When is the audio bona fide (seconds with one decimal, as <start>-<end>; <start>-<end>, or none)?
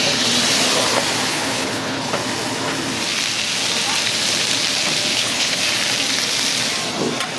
0.0-1.3; 2.1-5.1; 5.6-7.4